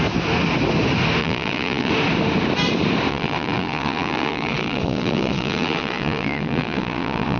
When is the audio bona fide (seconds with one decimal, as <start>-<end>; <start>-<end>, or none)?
0.0-1.2; 1.9-3.1